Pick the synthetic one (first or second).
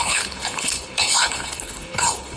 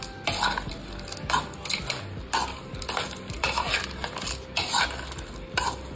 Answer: first